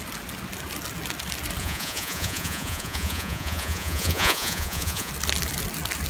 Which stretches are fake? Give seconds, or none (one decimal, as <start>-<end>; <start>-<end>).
1.6-5.1